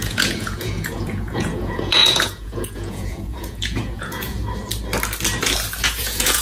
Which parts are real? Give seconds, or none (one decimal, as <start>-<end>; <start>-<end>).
4.4-5.8